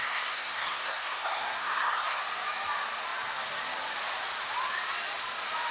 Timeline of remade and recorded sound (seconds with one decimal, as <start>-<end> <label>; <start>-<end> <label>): 0.0-2.2 remade; 2.2-5.7 recorded